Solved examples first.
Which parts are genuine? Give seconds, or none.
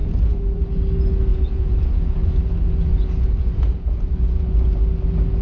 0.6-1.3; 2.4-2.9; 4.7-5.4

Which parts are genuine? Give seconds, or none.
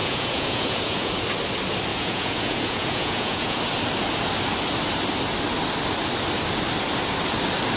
1.1-1.9; 3.6-7.8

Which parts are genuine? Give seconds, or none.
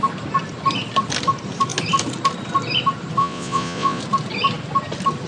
0.0-3.2; 4.0-5.3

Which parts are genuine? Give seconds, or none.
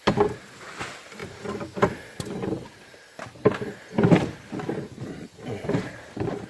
0.0-6.5